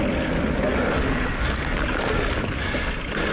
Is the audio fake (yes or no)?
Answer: no